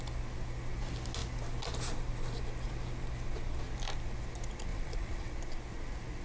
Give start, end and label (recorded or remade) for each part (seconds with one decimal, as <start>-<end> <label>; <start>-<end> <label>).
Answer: 0.0-4.7 recorded; 4.7-5.3 remade; 5.3-6.2 recorded